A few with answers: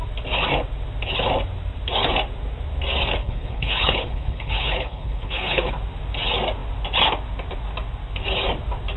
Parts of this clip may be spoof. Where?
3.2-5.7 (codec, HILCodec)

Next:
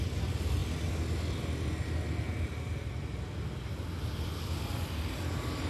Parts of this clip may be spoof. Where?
none